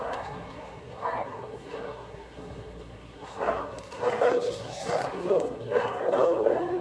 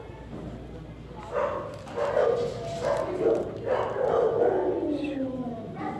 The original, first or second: second